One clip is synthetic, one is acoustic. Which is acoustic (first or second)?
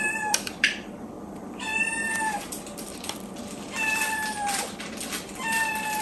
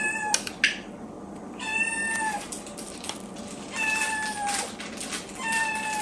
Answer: second